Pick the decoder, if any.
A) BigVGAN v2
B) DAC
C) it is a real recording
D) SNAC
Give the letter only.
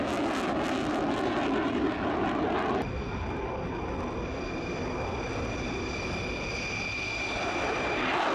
C